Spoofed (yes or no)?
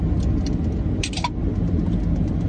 no